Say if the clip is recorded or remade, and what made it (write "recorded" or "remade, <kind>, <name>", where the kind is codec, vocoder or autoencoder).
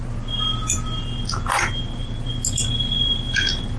recorded